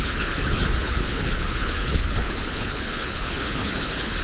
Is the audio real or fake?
fake